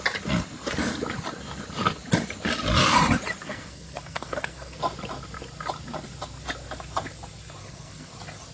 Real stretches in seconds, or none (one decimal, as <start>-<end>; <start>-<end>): 0.0-3.4; 4.8-7.6; 8.1-8.5